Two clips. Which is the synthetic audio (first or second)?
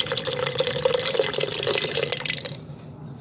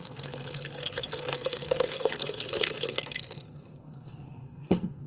second